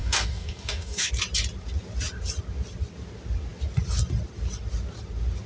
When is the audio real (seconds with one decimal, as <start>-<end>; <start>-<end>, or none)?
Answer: 1.1-5.5